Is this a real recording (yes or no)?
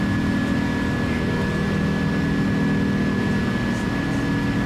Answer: yes